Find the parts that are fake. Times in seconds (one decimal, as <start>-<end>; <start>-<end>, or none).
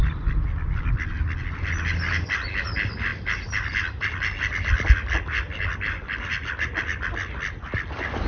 none